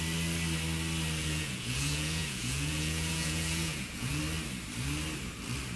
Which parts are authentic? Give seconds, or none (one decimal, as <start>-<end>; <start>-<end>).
0.0-1.2; 4.2-5.8